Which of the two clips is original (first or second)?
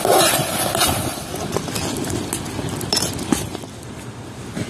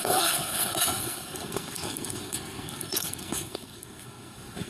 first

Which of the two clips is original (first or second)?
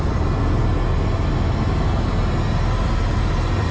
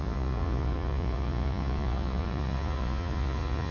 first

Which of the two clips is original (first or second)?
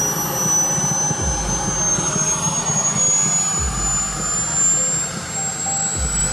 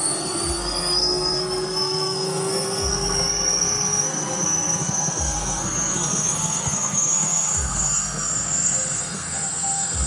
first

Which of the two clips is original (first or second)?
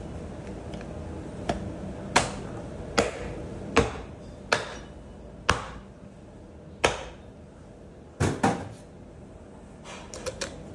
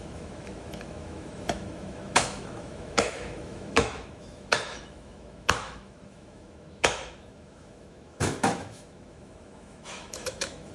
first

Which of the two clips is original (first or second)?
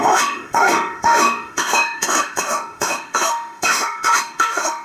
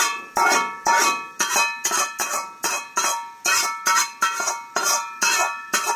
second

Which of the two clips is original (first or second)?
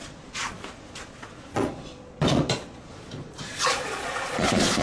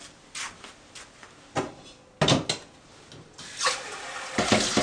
second